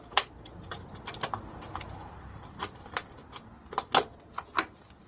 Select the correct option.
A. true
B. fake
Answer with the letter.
A